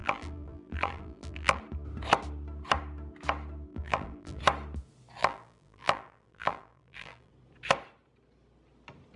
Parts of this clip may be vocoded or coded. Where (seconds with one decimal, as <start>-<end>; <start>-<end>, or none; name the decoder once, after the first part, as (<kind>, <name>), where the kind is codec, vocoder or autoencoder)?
0.0-1.6 (vocoder, BigVGAN v2); 3.7-4.4; 5.2-7.3